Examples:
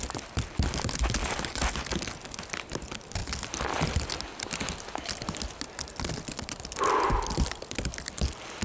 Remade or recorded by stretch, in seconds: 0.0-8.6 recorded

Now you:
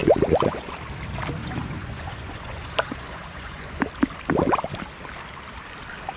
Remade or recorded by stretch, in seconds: 0.0-0.7 remade; 0.7-1.4 recorded; 1.4-3.8 remade; 3.8-6.2 recorded

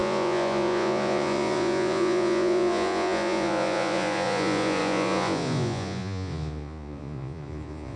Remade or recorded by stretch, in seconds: 0.0-8.0 remade

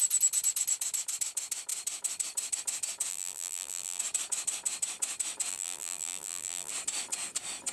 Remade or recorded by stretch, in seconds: 0.0-3.1 recorded; 3.1-4.0 remade; 4.0-5.5 recorded; 5.5-6.7 remade; 6.7-7.7 recorded